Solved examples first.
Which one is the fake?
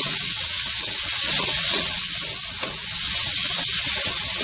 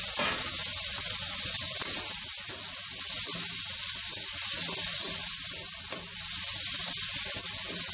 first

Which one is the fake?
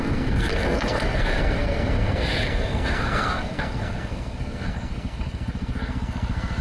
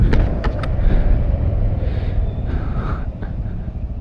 first